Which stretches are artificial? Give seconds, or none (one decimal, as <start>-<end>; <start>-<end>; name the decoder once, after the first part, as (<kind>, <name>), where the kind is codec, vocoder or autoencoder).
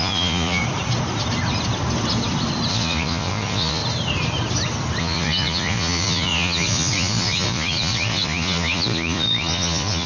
0.0-0.6 (vocoder, Vocos); 2.7-3.8; 5.0-10.1